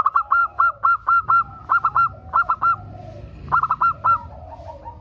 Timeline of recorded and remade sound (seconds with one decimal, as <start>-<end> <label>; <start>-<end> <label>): 0.0-5.0 recorded